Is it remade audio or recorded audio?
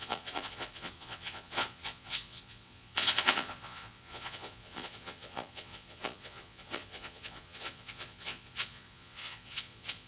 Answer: remade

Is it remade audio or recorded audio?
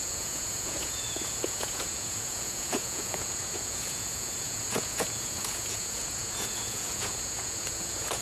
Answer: remade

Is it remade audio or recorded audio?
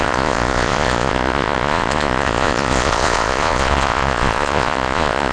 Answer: remade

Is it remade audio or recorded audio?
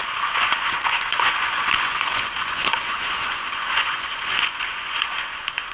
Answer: remade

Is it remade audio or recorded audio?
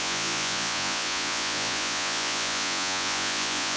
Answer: remade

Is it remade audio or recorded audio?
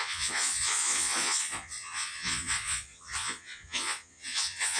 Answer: remade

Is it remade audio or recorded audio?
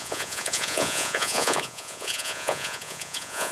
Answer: remade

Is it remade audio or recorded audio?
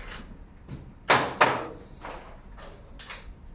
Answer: recorded